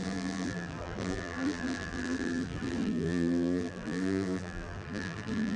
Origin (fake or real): fake